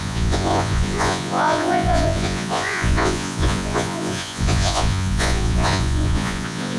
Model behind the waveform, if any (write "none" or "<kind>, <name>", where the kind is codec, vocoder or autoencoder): vocoder, Vocos